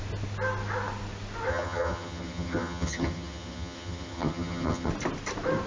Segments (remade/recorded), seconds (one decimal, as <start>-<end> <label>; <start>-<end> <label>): 0.0-1.5 recorded; 1.5-4.9 remade; 4.9-5.7 recorded